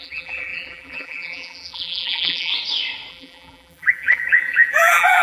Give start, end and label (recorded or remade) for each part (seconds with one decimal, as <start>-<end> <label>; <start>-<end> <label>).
0.0-2.5 remade; 2.5-3.1 recorded; 3.1-5.2 remade

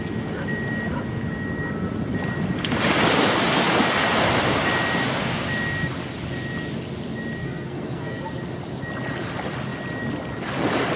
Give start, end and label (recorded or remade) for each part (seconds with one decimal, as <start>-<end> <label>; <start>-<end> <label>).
0.0-7.4 recorded; 7.4-8.2 remade; 8.2-11.0 recorded

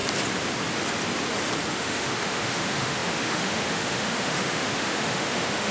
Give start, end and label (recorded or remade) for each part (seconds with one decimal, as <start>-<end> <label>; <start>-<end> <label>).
0.0-1.7 recorded; 1.7-5.7 remade

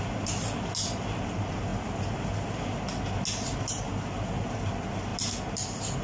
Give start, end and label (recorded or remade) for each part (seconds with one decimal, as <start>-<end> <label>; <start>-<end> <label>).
0.0-6.0 recorded

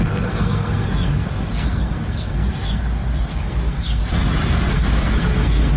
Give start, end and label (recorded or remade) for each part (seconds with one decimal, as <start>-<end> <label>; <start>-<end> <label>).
0.0-4.0 remade; 4.0-4.7 recorded; 4.7-5.8 remade